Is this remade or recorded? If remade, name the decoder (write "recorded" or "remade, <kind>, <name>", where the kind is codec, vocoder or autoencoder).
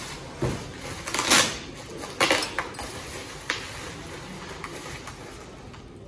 recorded